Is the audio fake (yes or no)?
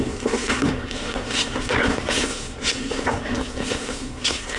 yes